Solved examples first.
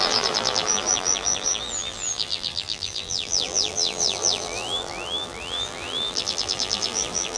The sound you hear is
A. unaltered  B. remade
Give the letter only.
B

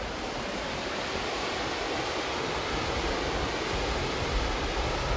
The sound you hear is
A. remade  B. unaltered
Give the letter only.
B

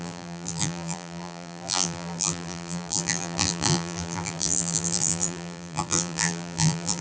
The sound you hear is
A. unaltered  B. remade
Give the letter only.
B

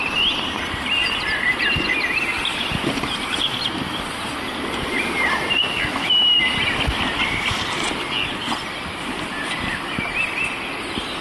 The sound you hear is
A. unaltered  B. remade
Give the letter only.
A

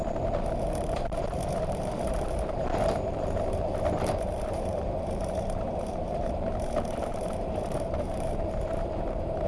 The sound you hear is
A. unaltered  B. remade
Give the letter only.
B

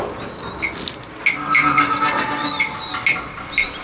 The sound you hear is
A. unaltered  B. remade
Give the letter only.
A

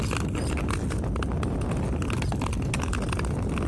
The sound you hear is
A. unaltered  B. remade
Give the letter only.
A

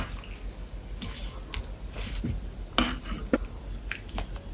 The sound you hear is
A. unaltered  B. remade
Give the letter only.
A